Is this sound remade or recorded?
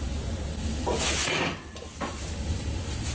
recorded